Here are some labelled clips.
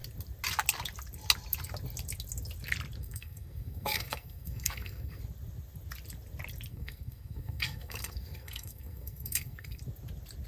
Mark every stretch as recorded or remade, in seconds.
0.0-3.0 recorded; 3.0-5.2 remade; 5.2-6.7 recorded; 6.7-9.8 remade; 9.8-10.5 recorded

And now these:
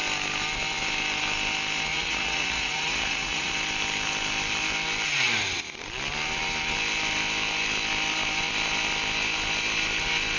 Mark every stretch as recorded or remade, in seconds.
0.0-1.9 recorded; 1.9-3.5 remade; 3.5-10.4 recorded

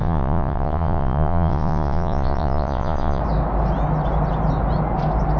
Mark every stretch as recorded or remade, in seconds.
0.0-3.2 remade; 3.2-5.4 recorded